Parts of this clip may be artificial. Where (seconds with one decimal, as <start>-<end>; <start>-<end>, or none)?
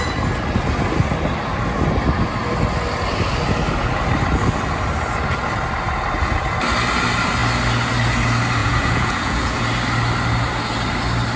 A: 8.6-9.6